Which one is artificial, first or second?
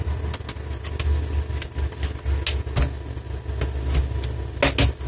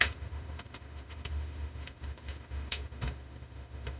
second